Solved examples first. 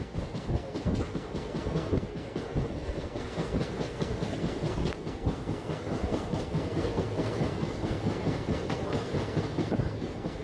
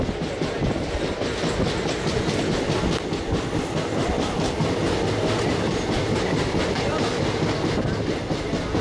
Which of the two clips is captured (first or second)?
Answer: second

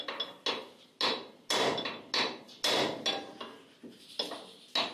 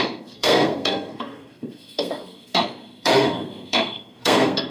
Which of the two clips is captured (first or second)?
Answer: first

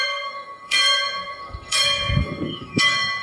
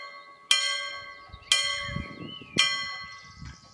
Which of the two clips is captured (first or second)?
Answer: second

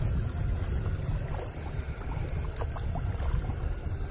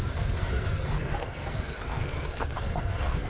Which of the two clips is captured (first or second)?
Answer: first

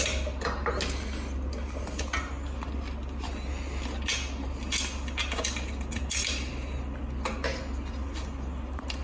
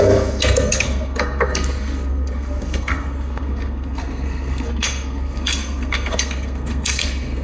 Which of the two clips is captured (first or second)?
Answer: first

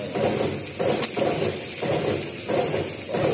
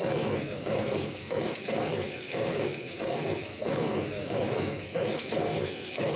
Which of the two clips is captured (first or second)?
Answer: first